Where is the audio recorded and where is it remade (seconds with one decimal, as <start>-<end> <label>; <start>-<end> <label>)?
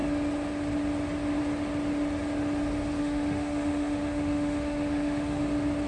0.0-3.0 recorded; 3.0-5.4 remade; 5.4-5.9 recorded